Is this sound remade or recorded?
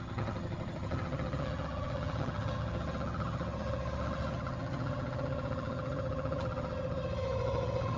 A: remade